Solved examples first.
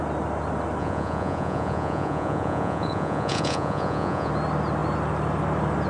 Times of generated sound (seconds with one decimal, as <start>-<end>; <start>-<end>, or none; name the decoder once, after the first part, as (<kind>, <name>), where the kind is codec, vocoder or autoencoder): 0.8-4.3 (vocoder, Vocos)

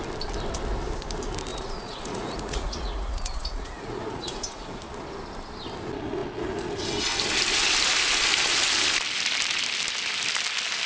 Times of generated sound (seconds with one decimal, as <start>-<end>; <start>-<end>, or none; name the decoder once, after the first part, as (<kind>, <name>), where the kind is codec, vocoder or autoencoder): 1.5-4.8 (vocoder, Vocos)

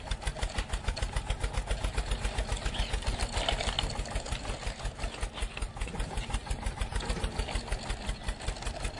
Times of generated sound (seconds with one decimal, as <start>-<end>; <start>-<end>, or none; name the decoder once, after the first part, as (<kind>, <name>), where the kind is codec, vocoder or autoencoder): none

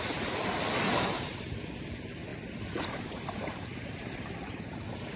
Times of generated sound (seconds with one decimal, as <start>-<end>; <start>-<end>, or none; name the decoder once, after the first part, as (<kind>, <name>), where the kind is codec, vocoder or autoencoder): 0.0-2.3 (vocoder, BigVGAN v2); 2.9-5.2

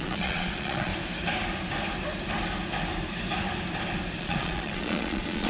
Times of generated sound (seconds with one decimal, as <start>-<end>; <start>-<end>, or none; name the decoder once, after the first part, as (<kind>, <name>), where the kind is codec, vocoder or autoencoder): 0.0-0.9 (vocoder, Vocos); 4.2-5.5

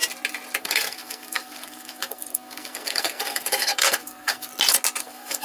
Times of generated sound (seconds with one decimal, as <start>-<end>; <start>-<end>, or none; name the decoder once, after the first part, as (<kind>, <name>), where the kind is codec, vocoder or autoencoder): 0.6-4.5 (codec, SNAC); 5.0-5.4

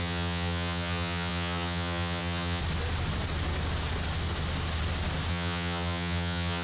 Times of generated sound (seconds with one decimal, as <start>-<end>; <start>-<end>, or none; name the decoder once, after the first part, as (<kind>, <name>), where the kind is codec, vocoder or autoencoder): 0.0-2.6 (vocoder, HiFi-GAN); 5.3-6.6

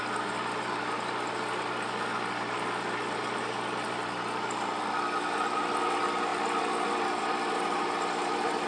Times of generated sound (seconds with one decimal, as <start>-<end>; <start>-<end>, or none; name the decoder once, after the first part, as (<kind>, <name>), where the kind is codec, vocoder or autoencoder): none